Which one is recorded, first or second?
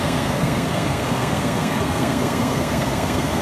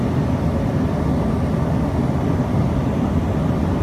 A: second